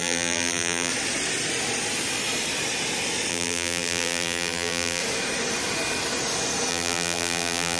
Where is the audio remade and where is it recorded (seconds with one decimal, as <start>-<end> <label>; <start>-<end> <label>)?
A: 0.0-0.9 remade; 0.9-3.3 recorded; 3.3-5.0 remade; 5.0-6.7 recorded; 6.7-7.8 remade